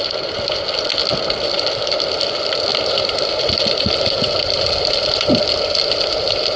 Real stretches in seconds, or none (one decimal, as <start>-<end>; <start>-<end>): 0.0-2.7; 5.2-6.6